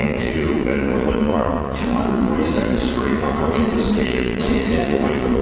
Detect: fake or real fake